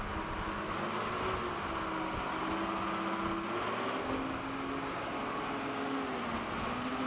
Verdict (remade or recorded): recorded